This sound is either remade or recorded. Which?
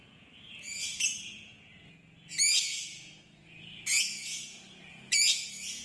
remade